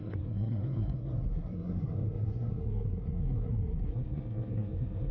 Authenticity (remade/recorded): remade